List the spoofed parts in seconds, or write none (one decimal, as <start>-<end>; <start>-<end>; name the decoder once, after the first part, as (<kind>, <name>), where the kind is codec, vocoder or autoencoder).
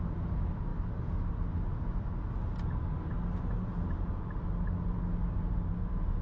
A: none